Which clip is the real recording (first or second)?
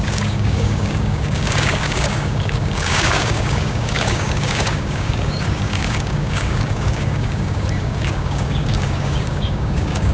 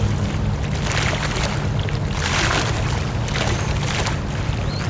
second